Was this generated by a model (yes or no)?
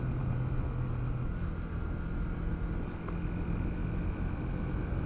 no